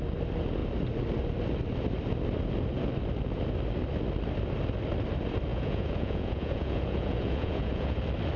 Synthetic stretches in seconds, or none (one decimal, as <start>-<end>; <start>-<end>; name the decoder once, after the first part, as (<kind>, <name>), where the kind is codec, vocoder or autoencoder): 5.5-8.0 (vocoder, Vocos)